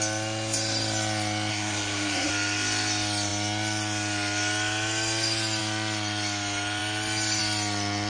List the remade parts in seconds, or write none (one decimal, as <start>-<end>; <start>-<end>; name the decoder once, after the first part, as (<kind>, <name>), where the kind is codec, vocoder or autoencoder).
1.5-2.3 (codec, SNAC)